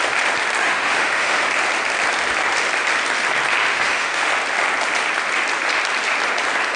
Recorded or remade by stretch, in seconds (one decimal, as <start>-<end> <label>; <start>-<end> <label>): 0.0-0.6 recorded; 0.6-1.5 remade; 1.5-3.7 recorded; 3.7-4.3 remade; 4.3-6.8 recorded